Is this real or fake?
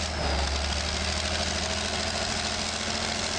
real